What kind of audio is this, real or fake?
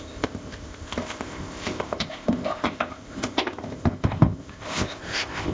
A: fake